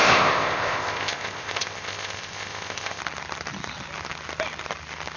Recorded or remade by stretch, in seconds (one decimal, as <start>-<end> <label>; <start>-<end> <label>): 0.0-3.0 remade; 3.0-5.2 recorded